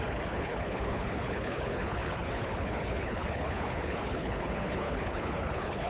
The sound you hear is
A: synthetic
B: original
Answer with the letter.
A